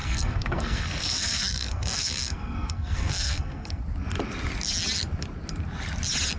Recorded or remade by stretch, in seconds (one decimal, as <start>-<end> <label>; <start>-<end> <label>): 0.0-3.8 remade; 3.8-6.4 recorded